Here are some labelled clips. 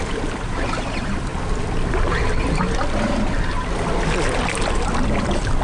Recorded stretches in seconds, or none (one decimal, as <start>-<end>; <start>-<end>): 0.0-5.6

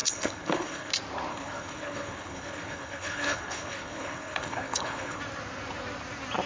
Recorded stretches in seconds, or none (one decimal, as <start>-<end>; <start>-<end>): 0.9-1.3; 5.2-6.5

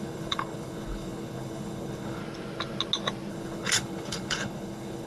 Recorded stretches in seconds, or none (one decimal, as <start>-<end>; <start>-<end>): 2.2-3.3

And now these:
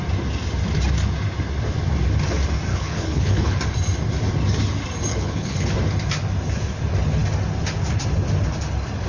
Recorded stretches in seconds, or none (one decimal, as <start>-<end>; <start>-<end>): 0.0-2.7; 3.6-5.1; 5.7-9.1